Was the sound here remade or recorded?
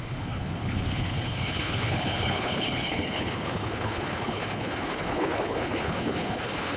remade